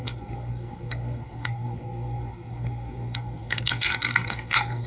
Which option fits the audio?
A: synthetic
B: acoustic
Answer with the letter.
A